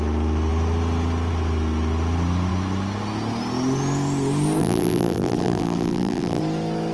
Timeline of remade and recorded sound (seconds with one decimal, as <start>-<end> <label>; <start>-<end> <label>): 0.0-4.6 recorded; 4.6-6.4 remade; 6.4-6.9 recorded